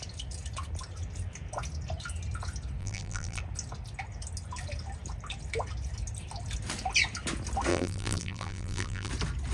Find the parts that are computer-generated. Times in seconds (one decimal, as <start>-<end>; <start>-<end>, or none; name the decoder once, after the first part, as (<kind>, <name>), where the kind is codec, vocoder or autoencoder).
2.8-3.4 (vocoder, BigVGAN v2); 7.7-9.1